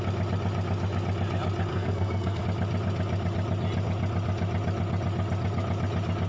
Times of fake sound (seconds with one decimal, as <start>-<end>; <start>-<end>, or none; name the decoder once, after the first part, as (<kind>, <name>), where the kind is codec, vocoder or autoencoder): 1.7-2.4 (codec, SNAC)

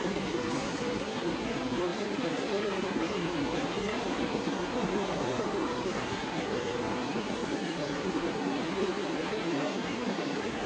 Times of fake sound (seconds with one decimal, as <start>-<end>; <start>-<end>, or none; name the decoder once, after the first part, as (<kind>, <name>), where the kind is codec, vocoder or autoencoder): 0.0-10.7 (codec, SNAC)

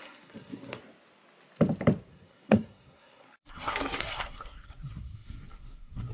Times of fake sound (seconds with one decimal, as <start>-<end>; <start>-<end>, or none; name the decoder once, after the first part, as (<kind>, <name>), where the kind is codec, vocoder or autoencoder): 0.0-0.8 (codec, SNAC); 2.1-6.1

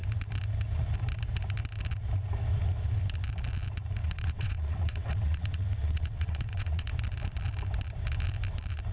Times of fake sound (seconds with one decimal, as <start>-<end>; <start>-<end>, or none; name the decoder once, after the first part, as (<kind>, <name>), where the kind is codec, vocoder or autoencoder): 4.0-6.9 (vocoder, WaveNeXt)